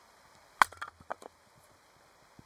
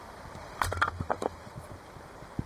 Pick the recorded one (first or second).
first